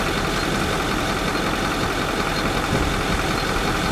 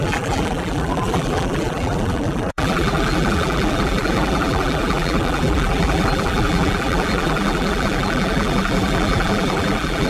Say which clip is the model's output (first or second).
second